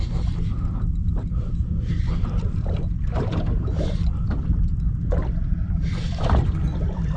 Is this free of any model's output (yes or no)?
no